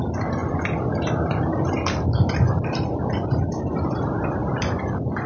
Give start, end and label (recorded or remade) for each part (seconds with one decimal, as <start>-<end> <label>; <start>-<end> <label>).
0.0-0.4 recorded; 0.4-3.6 remade; 3.6-4.4 recorded; 4.4-5.3 remade